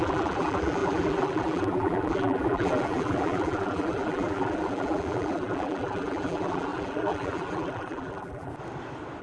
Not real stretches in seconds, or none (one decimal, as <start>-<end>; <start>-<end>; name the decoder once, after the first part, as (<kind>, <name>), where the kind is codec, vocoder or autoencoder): 0.0-8.5 (vocoder, BigVGAN v2)